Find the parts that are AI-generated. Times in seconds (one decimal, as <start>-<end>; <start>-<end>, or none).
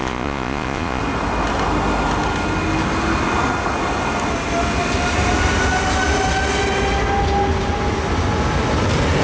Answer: 0.0-1.0